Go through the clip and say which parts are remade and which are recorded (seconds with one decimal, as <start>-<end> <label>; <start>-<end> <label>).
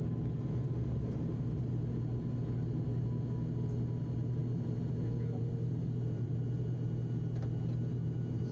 0.0-4.4 recorded; 4.4-6.3 remade; 6.3-8.5 recorded